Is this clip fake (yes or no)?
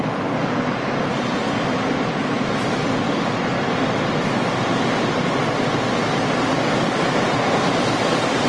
no